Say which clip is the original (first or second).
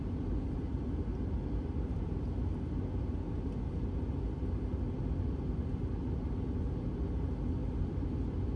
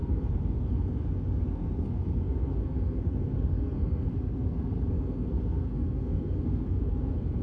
first